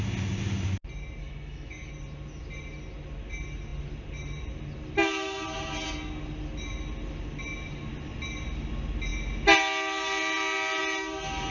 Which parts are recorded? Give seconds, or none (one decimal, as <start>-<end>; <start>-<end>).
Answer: 0.0-1.2; 1.9-11.5